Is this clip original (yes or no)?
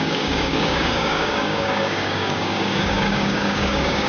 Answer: no